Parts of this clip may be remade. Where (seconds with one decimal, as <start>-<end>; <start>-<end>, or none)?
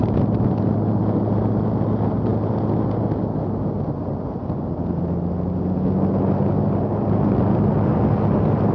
none